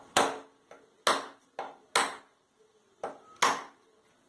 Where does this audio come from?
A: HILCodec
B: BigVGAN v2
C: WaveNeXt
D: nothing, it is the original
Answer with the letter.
D